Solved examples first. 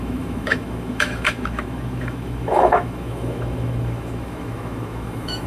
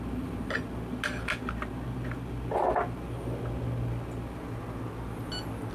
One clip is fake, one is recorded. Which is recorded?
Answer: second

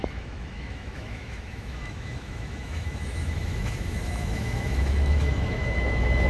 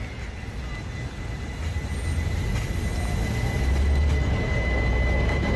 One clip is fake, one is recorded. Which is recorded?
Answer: second